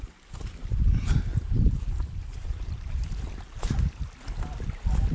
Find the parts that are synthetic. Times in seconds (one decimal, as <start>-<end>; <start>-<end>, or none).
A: 0.6-3.7